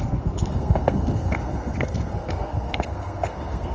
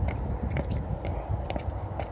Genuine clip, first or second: second